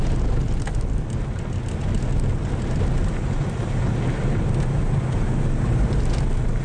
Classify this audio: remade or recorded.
recorded